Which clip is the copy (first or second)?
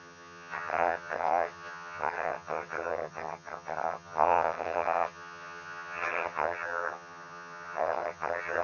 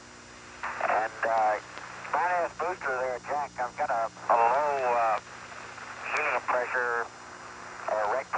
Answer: first